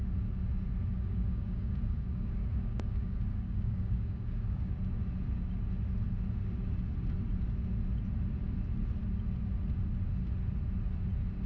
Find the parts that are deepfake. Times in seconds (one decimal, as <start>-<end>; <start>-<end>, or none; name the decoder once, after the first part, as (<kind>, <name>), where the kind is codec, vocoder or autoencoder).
0.8-4.7 (codec, DAC)